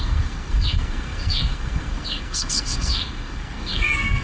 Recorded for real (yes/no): no